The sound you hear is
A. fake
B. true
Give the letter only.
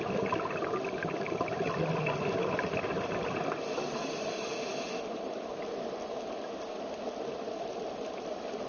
B